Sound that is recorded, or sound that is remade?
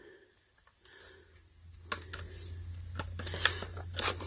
recorded